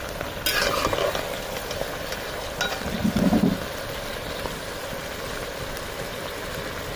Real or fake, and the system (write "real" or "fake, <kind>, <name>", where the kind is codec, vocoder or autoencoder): real